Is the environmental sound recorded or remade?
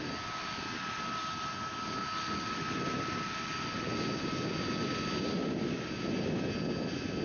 recorded